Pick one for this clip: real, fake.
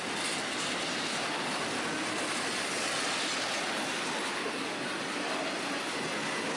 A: real